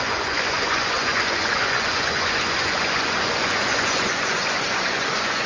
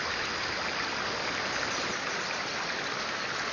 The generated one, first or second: first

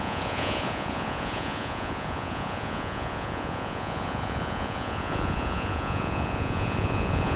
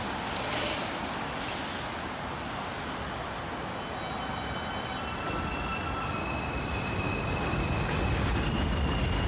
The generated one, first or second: first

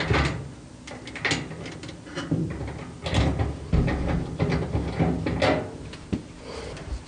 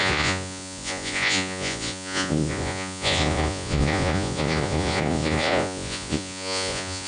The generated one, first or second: second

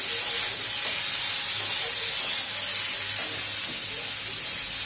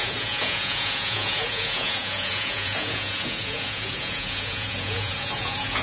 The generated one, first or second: second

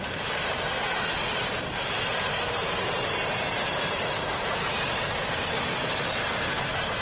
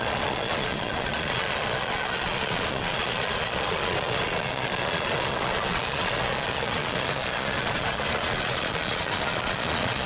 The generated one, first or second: second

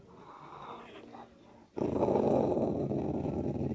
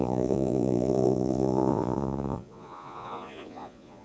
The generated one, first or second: second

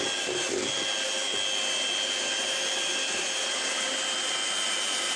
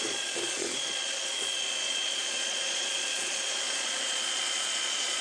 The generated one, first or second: second